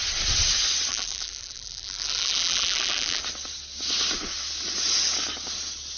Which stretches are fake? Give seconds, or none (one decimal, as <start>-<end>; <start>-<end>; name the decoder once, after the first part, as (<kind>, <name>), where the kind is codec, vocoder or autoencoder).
0.9-3.2 (vocoder, BigVGAN v2)